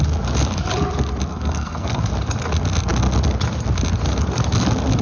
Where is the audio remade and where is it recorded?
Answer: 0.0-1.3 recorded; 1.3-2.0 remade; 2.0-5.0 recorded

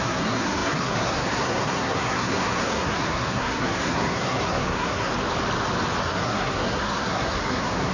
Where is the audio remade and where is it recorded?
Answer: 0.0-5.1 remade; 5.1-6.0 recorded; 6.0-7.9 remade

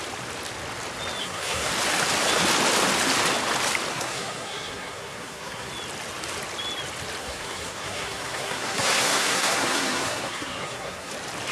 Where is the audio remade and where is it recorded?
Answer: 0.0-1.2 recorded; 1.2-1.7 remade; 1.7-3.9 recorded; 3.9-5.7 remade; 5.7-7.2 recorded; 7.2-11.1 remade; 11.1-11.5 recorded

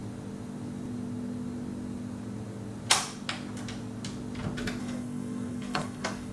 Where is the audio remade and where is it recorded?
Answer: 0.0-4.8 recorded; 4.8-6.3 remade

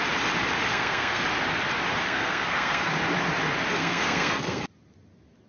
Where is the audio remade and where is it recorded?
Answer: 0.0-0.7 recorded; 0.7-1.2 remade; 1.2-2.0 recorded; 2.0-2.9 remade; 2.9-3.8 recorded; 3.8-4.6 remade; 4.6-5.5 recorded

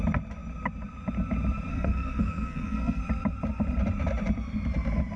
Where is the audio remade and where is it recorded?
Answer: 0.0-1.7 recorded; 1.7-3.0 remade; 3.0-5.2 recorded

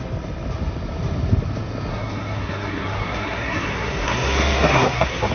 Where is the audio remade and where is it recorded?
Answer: 0.0-1.9 recorded; 1.9-5.3 remade

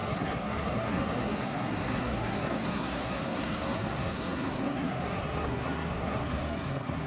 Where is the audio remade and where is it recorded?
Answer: 0.0-7.1 remade